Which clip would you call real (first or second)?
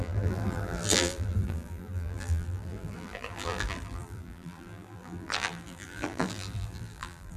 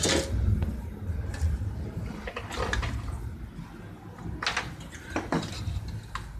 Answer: second